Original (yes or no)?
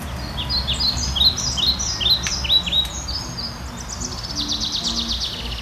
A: yes